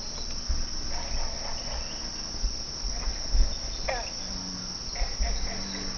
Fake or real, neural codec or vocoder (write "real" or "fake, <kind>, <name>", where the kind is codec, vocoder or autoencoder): real